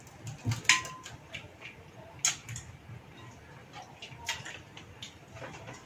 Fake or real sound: real